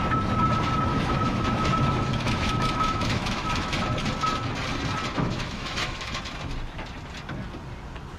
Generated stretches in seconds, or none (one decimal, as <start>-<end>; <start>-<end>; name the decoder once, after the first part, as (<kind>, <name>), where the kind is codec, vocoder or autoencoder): 0.9-1.7 (autoencoder, DAC-VAE); 2.1-3.8; 5.1-6.2